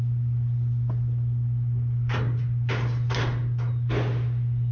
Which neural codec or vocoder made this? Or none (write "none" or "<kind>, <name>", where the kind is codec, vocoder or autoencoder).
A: none